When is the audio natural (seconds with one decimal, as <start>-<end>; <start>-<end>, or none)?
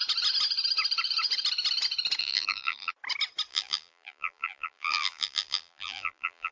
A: 0.0-2.2; 2.9-3.5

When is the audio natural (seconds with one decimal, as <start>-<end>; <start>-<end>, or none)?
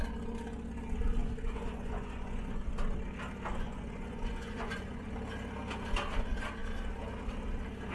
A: 0.0-1.2; 2.6-3.5; 5.1-7.9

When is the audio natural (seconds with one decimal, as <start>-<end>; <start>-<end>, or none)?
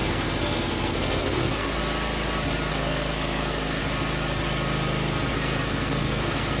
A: 1.8-2.7; 3.8-5.3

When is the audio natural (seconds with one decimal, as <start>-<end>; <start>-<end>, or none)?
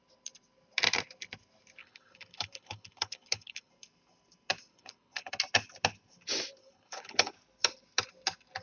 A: 0.0-1.8; 3.7-4.7; 5.3-6.6; 7.3-8.6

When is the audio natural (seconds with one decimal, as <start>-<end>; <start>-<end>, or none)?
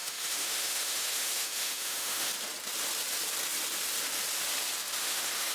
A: 2.3-5.0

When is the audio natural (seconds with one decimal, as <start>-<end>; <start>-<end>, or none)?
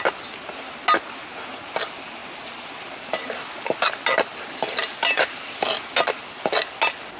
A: 0.0-2.2; 2.8-4.3; 5.4-7.2